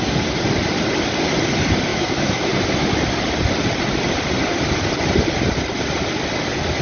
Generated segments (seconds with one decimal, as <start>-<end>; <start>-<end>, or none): 1.9-2.5